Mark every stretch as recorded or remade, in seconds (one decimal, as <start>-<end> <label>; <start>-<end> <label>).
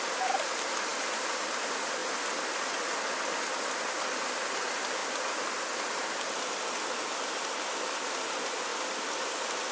0.0-9.7 recorded